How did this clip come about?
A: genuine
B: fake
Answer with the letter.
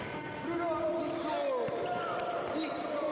A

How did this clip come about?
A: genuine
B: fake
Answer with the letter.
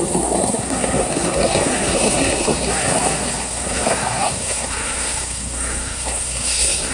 B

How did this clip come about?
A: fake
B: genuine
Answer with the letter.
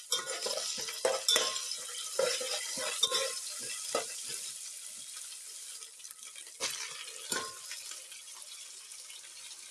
B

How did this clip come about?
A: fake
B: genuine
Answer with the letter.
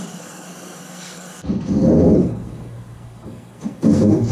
A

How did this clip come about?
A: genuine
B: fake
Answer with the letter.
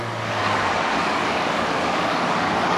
B